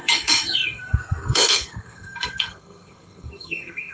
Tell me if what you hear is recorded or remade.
remade